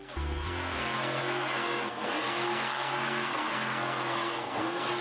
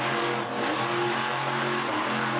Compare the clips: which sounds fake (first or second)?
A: first